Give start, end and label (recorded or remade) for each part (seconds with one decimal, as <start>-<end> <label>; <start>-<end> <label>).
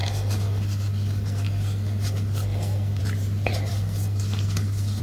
0.0-3.0 remade; 3.0-3.7 recorded; 3.7-5.0 remade